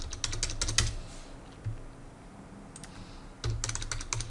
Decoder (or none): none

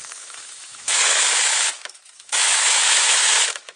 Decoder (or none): autoencoder, DAC-VAE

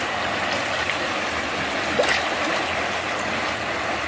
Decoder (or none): none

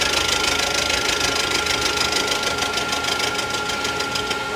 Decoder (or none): none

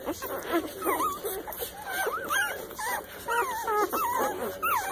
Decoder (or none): vocoder, BigVGAN v2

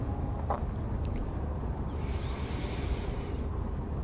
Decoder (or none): vocoder, BigVGAN v2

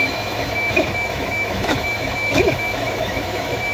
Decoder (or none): autoencoder, DAC-VAE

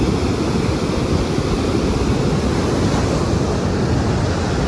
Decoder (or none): none